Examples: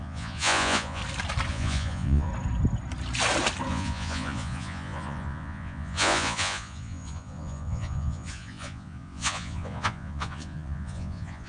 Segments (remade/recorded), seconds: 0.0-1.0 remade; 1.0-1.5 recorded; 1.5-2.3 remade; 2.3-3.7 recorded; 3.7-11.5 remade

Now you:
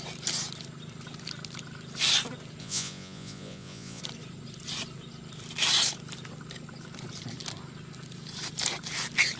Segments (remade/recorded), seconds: 0.0-2.6 recorded; 2.6-4.0 remade; 4.0-9.4 recorded

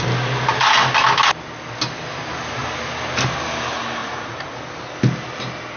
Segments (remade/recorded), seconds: 0.0-4.0 recorded; 4.0-4.6 remade; 4.6-5.8 recorded